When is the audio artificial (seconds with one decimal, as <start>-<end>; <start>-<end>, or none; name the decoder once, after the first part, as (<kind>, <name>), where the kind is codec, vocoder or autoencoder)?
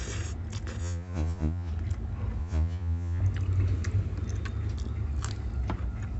0.8-1.7 (vocoder, Vocos); 2.4-3.2